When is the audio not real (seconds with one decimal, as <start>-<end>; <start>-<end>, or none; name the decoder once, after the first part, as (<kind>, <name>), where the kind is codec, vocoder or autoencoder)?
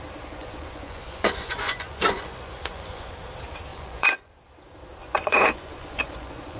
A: 0.4-3.1 (vocoder, Vocos); 3.7-4.3; 5.0-6.6